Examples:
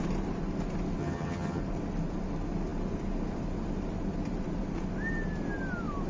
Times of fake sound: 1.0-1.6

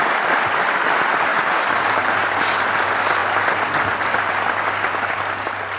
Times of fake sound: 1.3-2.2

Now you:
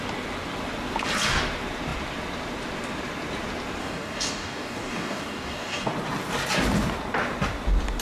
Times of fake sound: 3.8-5.9